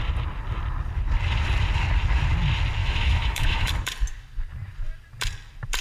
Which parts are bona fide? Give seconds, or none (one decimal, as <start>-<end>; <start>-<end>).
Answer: 0.0-2.8; 3.7-5.8